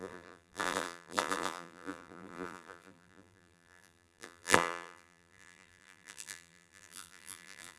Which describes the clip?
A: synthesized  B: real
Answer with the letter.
A